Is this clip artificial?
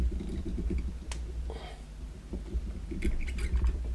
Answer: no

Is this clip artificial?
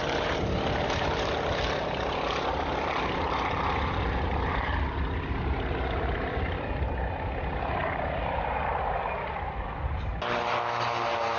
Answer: no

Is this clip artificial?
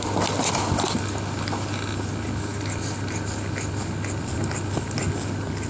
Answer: no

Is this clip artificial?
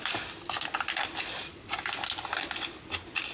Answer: no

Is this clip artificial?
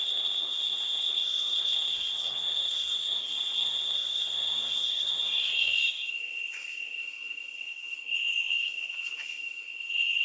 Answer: yes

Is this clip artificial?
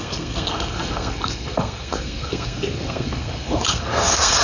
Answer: yes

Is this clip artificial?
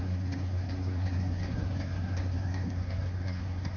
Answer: yes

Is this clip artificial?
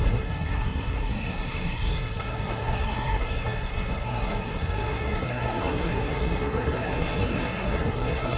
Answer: yes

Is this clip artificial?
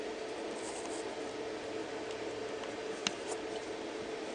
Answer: no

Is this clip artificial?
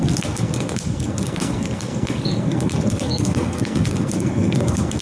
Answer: yes